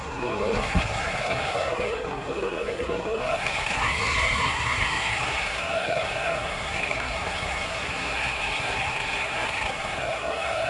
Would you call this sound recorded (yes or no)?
no